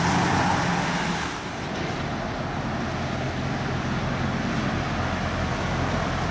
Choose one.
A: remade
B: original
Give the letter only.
B